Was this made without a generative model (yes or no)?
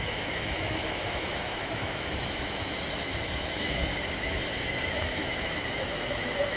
no